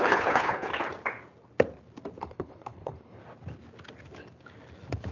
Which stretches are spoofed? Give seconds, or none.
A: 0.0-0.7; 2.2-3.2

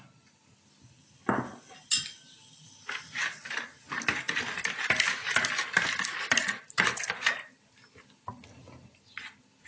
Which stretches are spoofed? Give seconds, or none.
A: none

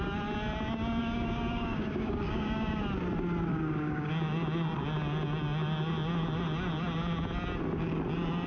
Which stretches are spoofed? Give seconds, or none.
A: 1.0-2.8; 3.5-4.1

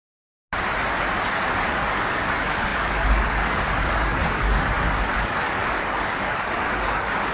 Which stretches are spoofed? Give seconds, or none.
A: 1.3-7.3

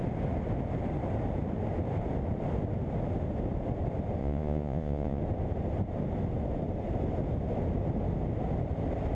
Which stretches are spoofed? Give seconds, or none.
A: 4.2-5.2

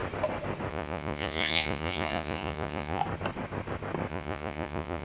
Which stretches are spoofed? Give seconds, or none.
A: 0.7-3.0; 4.1-5.0

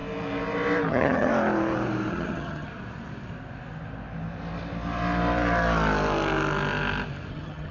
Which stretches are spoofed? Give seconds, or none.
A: 0.9-1.3; 2.1-2.7; 7.3-7.7